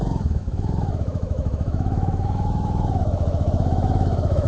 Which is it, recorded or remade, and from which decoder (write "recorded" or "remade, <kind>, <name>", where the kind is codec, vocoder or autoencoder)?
remade, autoencoder, DAC-VAE